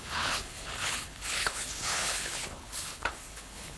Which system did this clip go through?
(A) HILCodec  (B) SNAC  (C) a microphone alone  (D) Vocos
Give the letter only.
A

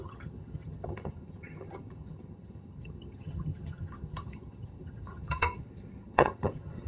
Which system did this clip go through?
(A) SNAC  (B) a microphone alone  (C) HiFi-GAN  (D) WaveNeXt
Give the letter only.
C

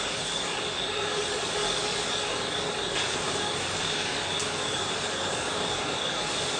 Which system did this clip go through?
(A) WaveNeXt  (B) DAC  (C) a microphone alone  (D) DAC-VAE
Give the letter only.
B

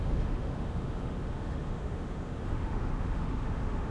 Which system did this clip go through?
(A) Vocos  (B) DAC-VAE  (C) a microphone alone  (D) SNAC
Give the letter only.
B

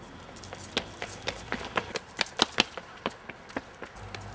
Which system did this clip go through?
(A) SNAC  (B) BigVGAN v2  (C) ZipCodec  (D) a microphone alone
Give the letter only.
D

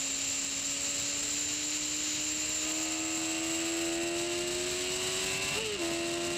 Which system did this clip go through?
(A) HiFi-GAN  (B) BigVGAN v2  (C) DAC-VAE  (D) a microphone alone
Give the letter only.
D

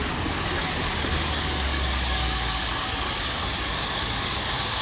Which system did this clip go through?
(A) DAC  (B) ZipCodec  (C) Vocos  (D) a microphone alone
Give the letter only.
A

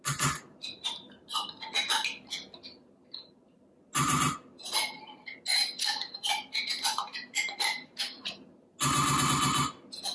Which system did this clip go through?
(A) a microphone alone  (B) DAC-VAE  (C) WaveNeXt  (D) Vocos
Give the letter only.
A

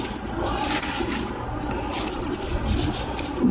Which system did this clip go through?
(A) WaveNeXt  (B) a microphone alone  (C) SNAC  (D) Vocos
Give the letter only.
B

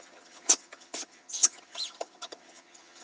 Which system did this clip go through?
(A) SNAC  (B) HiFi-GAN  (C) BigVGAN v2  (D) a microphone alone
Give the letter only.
B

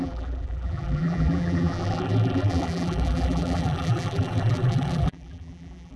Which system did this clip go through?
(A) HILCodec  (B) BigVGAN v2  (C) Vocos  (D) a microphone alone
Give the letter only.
B